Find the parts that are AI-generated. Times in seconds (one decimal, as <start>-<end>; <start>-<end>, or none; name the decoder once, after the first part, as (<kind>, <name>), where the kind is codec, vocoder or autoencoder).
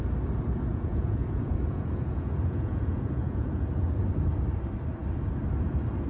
0.7-4.0 (vocoder, Vocos)